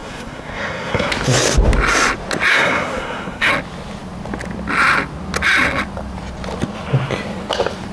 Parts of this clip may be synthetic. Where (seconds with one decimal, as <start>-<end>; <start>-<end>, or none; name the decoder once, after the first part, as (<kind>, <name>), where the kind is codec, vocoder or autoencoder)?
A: 0.0-1.1 (codec, SNAC); 2.5-3.5